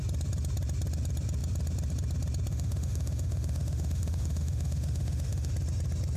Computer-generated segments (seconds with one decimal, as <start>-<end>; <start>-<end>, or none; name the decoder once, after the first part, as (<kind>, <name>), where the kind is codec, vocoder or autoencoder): 2.5-5.5 (autoencoder, DAC-VAE)